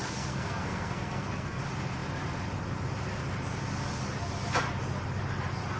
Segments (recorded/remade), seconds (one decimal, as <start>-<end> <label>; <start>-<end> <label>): 0.0-1.6 remade; 1.6-5.8 recorded